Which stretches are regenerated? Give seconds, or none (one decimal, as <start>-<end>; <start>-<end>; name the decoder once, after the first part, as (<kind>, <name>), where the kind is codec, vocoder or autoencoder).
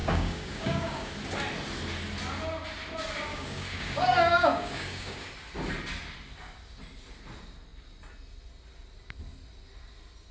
0.0-1.1 (codec, DAC); 3.3-5.3